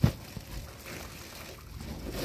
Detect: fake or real real